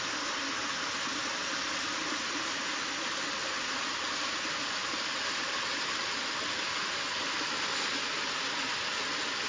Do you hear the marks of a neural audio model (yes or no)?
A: no